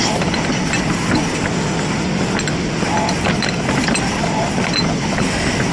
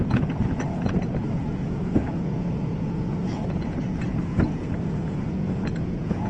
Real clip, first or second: first